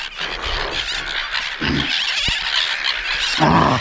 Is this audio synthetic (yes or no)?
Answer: no